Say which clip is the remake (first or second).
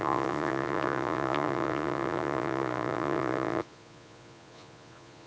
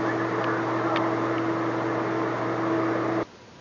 first